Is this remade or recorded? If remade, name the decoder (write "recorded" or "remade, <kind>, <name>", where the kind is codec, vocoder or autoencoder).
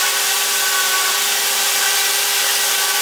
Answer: remade, vocoder, BigVGAN v2